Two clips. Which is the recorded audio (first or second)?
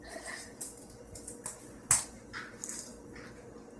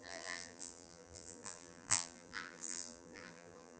first